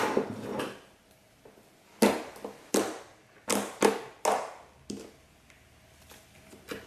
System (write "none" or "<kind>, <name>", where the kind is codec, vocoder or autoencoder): none